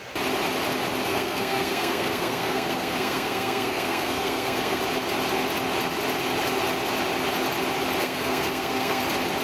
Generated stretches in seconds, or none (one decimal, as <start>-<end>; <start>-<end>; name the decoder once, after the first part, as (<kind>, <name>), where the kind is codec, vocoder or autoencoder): 1.1-4.8 (codec, SNAC); 8.0-9.0